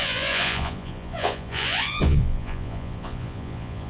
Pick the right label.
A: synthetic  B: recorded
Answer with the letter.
A